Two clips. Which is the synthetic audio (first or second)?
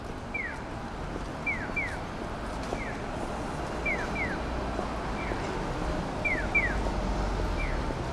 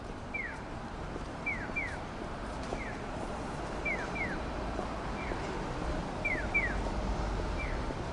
second